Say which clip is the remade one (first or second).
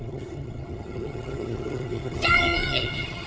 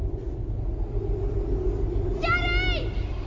first